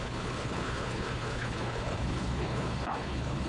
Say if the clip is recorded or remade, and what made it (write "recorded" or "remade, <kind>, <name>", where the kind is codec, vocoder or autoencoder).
remade, codec, HILCodec